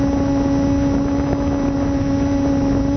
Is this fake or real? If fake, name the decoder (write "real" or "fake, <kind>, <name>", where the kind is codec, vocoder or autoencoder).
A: real